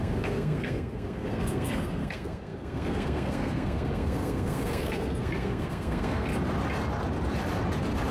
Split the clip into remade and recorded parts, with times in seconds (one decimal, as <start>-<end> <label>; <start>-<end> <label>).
0.0-6.3 remade; 6.3-8.1 recorded